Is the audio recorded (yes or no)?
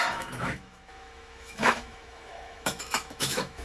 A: no